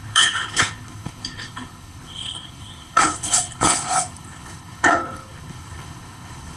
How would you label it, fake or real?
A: fake